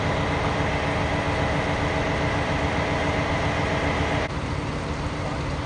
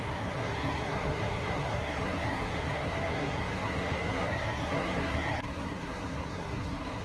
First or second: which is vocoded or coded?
second